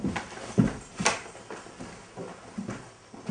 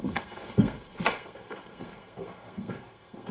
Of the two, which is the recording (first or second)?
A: first